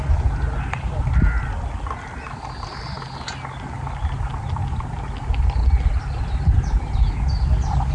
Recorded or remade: recorded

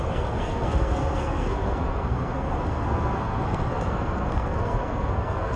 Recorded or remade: remade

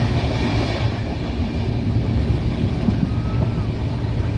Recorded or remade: recorded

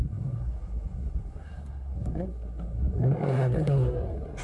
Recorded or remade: remade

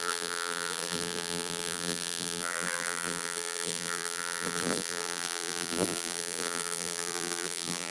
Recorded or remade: remade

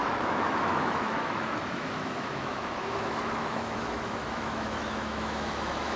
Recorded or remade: remade